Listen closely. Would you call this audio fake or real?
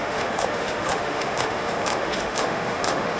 fake